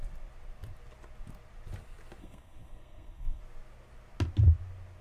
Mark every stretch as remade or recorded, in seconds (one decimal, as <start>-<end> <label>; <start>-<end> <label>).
0.0-2.2 recorded; 2.2-3.4 remade; 3.4-5.0 recorded